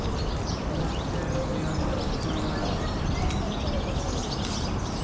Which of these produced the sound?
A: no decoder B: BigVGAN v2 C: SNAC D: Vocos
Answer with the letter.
A